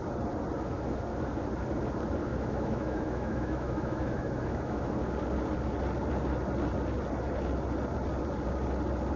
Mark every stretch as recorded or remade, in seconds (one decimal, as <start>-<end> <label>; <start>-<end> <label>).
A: 0.0-2.3 recorded; 2.3-4.9 remade; 4.9-9.2 recorded